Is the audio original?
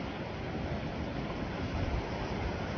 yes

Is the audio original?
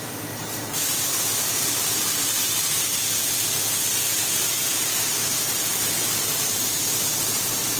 no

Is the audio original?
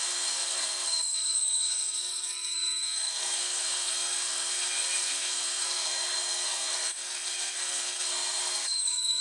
no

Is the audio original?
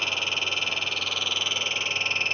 yes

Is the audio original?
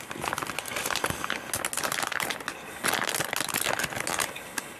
yes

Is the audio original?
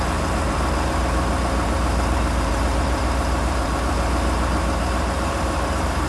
no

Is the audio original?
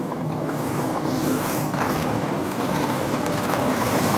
no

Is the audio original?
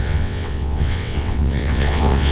no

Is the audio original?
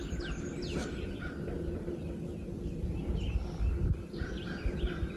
yes